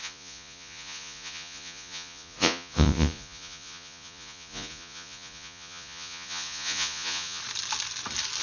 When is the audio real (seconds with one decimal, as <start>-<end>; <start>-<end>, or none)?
7.4-8.4